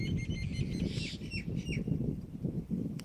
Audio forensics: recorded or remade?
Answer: recorded